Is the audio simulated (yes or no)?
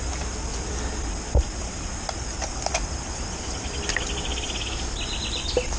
no